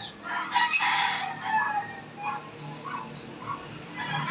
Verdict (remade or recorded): recorded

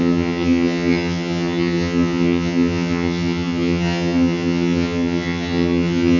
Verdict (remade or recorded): remade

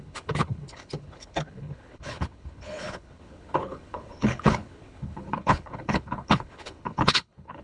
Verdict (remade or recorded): remade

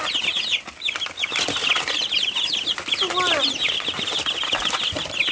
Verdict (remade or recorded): recorded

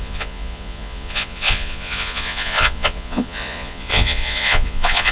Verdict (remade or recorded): remade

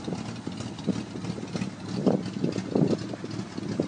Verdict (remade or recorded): recorded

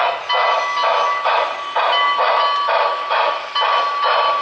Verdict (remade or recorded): recorded